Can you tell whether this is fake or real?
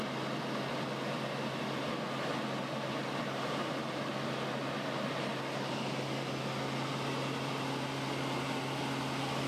real